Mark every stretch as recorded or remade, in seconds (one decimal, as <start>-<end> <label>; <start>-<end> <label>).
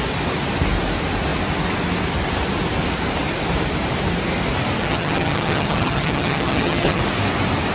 0.0-4.8 recorded; 4.8-7.0 remade; 7.0-7.7 recorded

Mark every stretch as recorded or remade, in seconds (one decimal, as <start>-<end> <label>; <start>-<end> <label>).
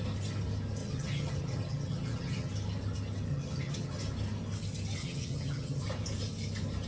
0.0-0.8 recorded; 0.8-2.5 remade; 2.5-3.3 recorded; 3.3-4.0 remade; 4.0-5.0 recorded; 5.0-5.8 remade; 5.8-6.9 recorded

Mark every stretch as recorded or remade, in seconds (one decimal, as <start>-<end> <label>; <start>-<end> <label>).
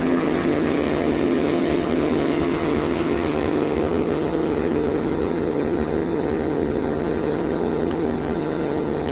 0.0-9.1 remade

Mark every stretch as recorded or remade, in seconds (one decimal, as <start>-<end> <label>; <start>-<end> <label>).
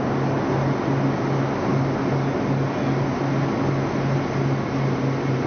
0.0-5.5 recorded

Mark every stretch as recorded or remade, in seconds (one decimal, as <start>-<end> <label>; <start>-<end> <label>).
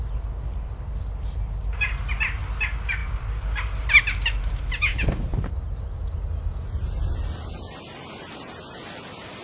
0.0-9.4 recorded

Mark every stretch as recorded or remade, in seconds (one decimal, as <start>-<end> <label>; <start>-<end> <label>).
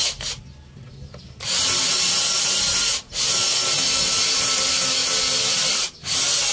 0.0-6.5 recorded